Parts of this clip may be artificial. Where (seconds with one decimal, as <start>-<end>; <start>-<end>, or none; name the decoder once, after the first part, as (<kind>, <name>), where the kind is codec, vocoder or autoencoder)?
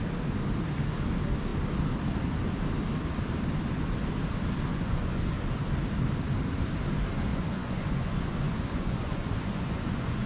4.7-5.3 (vocoder, Vocos); 7.3-10.3